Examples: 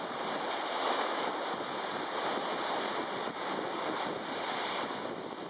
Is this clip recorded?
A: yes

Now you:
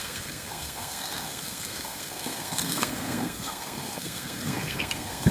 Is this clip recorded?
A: no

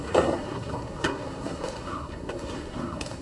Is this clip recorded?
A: no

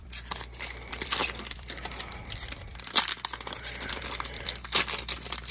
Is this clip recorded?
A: no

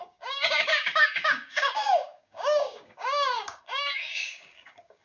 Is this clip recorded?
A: no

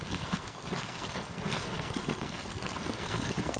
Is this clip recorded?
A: no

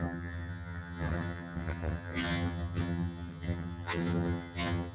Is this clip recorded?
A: no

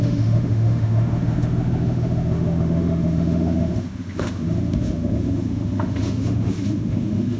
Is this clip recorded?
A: no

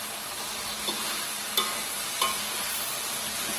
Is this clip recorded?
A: yes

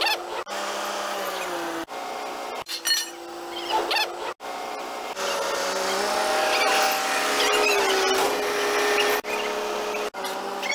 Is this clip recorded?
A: yes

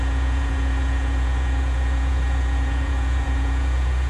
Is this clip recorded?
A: no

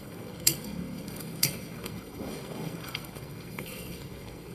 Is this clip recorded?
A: no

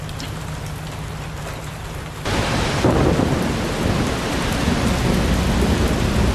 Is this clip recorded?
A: yes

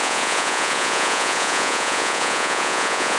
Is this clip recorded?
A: no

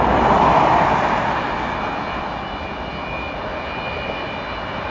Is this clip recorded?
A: yes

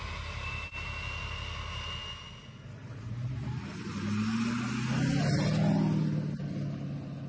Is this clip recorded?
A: yes